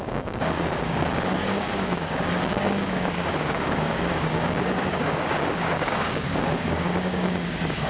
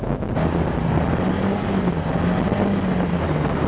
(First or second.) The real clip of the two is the second